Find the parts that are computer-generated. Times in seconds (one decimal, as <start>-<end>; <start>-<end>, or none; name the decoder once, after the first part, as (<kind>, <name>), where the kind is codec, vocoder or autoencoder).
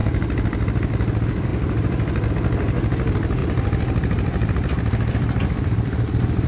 3.4-6.5 (vocoder, BigVGAN v2)